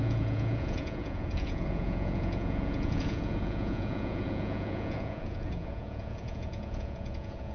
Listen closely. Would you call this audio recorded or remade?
remade